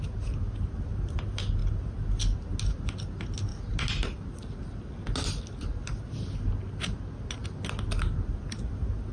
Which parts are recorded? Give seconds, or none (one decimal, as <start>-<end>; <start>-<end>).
0.0-9.1